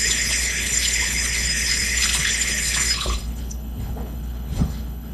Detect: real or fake fake